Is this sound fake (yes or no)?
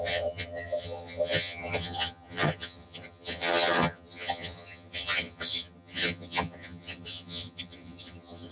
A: yes